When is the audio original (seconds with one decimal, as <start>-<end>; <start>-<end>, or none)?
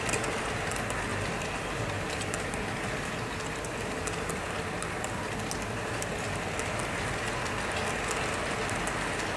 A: 0.0-9.4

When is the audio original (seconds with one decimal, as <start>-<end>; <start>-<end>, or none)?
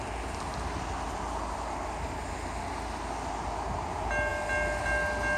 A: 0.0-5.4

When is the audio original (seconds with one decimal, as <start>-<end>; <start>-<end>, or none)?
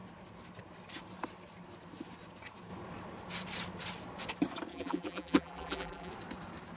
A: 0.0-4.7; 6.1-6.8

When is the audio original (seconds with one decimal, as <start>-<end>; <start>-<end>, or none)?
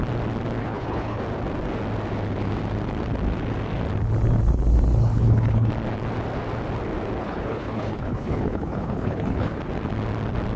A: 0.0-0.6; 1.2-5.0; 5.7-7.2; 9.6-10.6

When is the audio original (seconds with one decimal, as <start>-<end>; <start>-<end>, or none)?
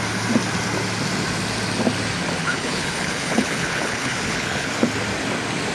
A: 0.0-2.4; 4.7-5.7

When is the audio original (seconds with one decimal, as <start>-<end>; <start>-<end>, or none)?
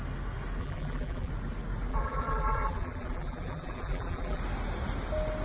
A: 0.0-0.6; 1.3-1.9; 4.4-5.4